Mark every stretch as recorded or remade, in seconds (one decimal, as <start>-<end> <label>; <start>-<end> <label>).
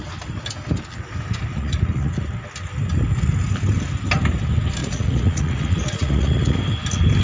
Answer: 0.0-1.5 recorded; 1.5-2.1 remade; 2.1-4.8 recorded; 4.8-6.6 remade; 6.6-7.2 recorded